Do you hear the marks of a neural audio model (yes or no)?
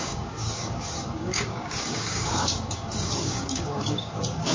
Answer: yes